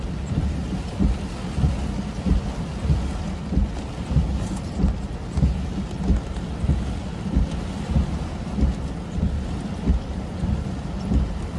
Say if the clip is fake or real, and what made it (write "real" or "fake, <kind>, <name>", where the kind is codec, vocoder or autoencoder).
real